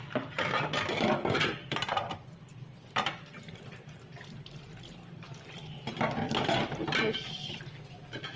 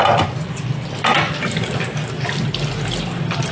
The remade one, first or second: first